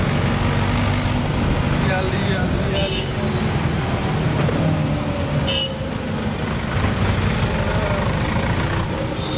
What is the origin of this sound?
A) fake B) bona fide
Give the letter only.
B